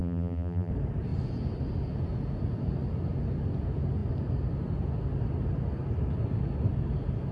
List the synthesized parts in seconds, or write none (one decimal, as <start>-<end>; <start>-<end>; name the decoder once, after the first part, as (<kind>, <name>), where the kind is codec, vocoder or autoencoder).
0.0-0.7 (vocoder, BigVGAN v2)

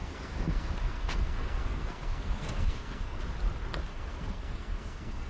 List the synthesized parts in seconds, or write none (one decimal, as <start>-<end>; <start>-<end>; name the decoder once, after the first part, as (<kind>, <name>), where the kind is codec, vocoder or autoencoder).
0.0-3.2 (codec, SNAC); 3.9-5.3

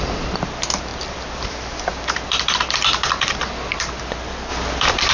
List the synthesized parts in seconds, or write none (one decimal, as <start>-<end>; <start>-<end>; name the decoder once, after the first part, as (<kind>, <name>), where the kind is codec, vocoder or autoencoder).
0.9-4.0 (vocoder, BigVGAN v2); 4.5-5.1